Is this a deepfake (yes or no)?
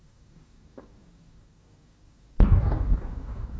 yes